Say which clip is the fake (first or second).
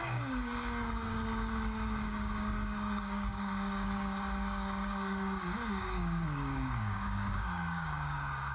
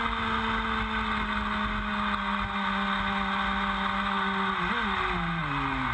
first